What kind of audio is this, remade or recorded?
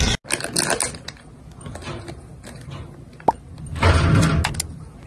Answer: recorded